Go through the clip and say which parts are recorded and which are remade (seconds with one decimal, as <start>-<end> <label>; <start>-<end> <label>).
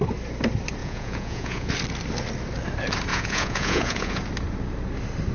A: 0.0-0.8 recorded; 0.8-1.7 remade; 1.7-3.1 recorded; 3.1-4.2 remade; 4.2-5.3 recorded